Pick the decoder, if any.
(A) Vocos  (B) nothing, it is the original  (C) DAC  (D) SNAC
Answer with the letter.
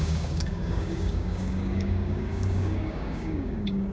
C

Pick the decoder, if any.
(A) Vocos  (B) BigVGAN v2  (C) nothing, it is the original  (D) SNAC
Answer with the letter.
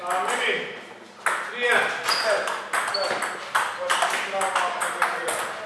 C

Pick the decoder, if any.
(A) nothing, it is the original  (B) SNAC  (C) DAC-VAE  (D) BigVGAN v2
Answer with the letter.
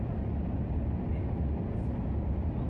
A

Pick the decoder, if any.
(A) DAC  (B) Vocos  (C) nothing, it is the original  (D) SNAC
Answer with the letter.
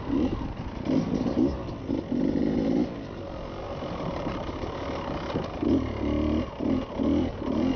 C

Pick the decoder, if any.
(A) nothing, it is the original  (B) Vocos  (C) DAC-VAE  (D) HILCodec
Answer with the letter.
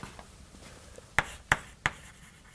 A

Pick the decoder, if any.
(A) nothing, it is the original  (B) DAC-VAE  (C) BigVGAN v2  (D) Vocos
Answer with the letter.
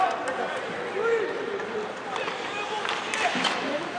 A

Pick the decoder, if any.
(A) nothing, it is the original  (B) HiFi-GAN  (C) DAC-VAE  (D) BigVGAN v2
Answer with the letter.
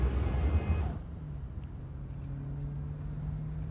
A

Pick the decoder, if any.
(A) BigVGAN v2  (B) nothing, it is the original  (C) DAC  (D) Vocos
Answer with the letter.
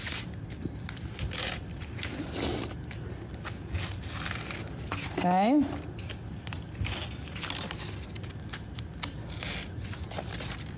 B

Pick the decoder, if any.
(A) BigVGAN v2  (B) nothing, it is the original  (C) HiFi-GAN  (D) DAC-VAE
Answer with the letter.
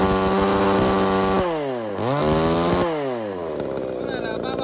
B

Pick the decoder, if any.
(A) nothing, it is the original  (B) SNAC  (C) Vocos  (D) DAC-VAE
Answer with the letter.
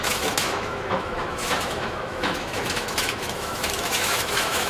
D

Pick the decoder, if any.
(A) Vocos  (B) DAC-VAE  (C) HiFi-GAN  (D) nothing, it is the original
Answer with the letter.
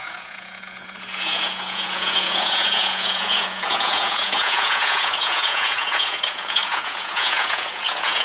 A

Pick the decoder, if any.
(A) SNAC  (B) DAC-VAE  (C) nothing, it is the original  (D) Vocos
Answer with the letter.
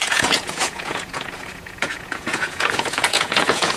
D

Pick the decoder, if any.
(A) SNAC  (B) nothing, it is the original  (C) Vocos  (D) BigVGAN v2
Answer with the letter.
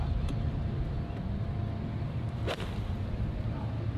D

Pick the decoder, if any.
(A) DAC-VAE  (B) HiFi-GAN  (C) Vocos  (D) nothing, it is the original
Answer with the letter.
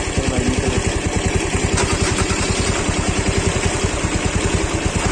D